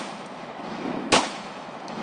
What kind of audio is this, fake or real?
fake